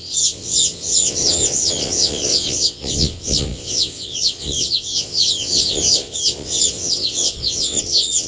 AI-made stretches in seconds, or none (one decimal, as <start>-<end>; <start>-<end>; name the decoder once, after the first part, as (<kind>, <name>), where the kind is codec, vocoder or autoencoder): 0.0-8.3 (vocoder, WaveNeXt)